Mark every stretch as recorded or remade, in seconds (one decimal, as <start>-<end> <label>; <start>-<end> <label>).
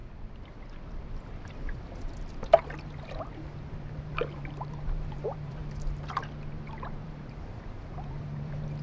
0.0-3.7 recorded; 3.7-5.6 remade; 5.6-7.0 recorded; 7.0-8.8 remade